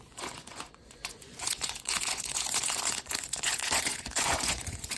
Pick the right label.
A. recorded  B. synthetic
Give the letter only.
B